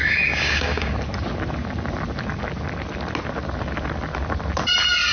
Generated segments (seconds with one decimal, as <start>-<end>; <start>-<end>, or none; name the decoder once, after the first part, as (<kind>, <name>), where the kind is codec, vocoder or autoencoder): 0.0-0.9 (codec, DAC)